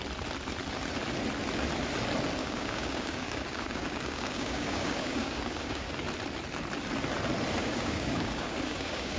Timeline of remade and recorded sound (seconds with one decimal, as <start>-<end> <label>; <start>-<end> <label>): 0.0-2.4 recorded; 2.4-5.9 remade; 5.9-7.6 recorded; 7.6-9.2 remade